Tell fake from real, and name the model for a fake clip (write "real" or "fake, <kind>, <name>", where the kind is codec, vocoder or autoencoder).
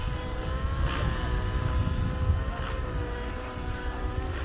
real